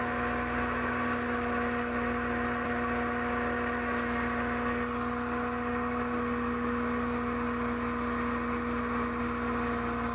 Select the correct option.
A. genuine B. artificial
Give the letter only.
A